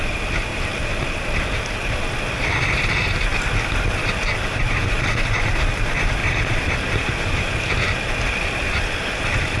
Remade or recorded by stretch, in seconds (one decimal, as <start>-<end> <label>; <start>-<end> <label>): 0.0-0.5 recorded; 0.5-1.2 remade; 1.2-4.3 recorded; 4.3-5.5 remade; 5.5-6.2 recorded; 6.2-7.7 remade; 7.7-9.6 recorded